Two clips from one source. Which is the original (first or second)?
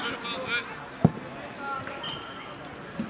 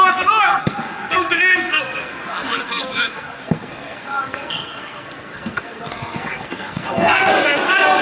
first